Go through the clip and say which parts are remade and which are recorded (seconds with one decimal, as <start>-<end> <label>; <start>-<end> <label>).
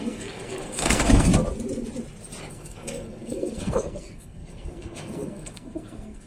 0.0-1.3 remade; 1.3-2.5 recorded; 2.5-6.3 remade